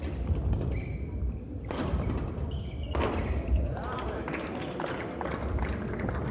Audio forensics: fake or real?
real